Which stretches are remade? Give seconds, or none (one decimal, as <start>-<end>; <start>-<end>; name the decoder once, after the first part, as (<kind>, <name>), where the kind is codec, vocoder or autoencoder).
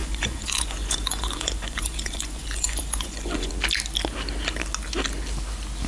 0.0-3.5 (vocoder, Vocos)